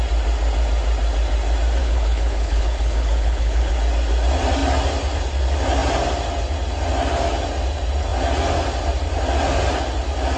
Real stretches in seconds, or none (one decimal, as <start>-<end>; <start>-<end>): 0.0-1.8; 3.7-10.4